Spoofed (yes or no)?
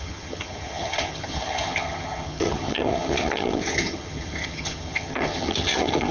yes